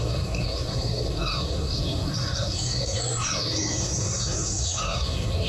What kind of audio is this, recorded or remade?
remade